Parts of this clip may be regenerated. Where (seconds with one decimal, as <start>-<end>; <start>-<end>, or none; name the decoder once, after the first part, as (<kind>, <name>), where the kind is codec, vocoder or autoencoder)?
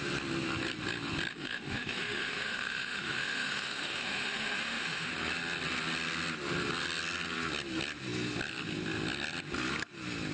1.3-5.1 (autoencoder, DAC-VAE)